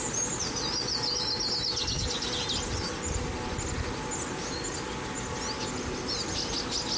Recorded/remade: recorded